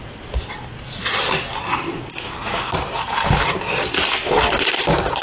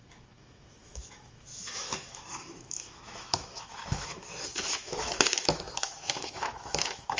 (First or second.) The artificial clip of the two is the second